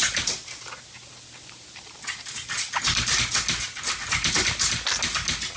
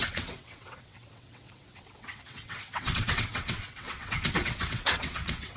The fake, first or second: second